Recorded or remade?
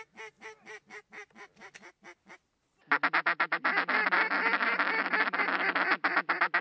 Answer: recorded